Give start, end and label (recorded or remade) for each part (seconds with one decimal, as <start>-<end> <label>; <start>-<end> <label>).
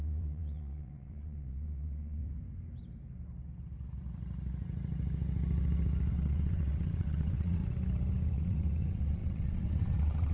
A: 0.0-2.2 remade; 2.2-6.1 recorded; 6.1-7.6 remade; 7.6-8.3 recorded; 8.3-10.3 remade